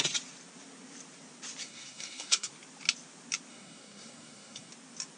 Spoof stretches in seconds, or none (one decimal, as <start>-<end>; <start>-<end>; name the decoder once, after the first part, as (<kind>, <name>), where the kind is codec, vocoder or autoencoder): 1.6-2.5 (codec, SNAC); 3.5-4.7

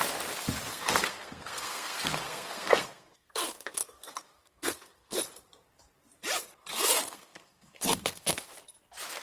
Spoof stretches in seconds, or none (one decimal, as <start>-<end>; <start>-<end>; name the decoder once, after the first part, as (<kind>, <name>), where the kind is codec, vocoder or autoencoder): 0.7-5.2 (codec, SNAC); 6.7-8.6

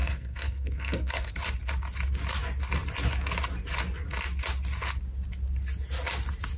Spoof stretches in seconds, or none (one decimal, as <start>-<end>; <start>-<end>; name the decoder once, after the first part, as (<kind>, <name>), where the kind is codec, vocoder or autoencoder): 0.0-1.3 (codec, SNAC)

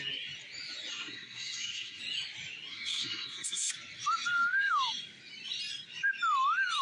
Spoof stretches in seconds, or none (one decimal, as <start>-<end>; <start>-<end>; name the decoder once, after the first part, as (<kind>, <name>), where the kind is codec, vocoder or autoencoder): 0.9-2.0 (codec, SNAC); 2.7-3.7

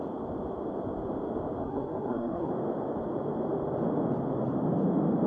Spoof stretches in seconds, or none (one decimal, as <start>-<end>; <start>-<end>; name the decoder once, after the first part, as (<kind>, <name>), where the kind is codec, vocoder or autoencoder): 1.6-2.5 (codec, SNAC)

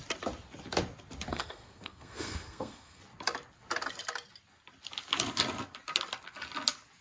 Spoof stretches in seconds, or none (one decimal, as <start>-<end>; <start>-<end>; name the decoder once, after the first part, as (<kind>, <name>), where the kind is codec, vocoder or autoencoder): 1.3-3.0 (codec, SNAC)